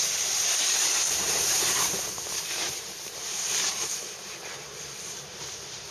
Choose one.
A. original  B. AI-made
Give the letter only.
B